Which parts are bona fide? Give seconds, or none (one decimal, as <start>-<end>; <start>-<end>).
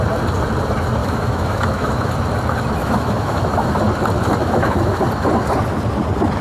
0.0-1.0; 2.1-2.8; 3.8-4.4; 5.0-6.4